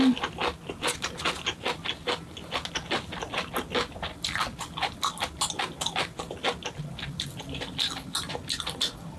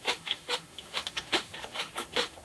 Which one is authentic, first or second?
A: first